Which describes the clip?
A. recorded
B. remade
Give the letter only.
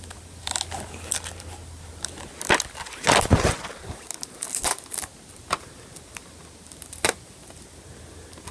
A